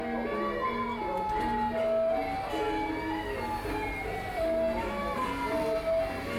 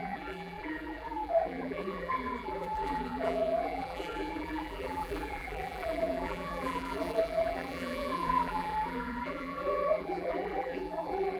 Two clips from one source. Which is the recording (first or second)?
first